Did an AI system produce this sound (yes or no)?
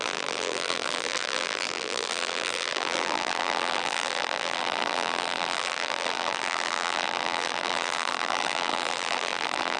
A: yes